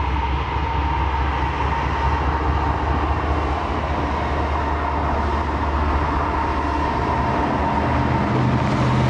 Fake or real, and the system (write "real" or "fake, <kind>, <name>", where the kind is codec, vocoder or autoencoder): real